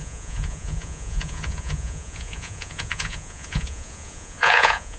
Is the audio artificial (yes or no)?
yes